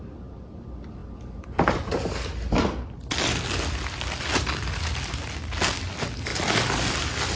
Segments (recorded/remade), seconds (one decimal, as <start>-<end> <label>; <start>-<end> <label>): 0.0-7.4 recorded